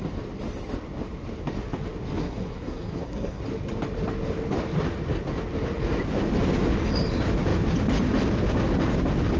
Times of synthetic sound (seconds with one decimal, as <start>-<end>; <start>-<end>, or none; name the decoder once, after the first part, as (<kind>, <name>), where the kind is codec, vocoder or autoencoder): 2.2-3.4 (codec, SNAC)